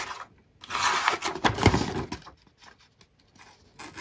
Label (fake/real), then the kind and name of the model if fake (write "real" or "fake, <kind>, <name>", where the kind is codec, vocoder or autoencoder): real